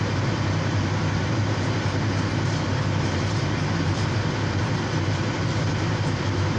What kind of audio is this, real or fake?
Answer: fake